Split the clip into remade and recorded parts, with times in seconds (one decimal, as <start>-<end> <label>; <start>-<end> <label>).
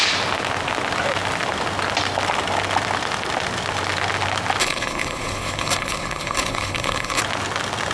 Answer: 0.0-4.6 recorded; 4.6-7.2 remade; 7.2-7.9 recorded